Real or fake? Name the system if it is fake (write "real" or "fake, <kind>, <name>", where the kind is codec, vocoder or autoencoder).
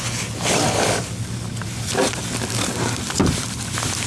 real